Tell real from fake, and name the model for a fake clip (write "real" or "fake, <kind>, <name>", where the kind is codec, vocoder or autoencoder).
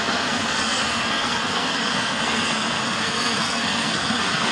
fake, codec, SNAC